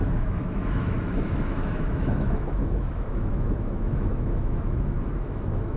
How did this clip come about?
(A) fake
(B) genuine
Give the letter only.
A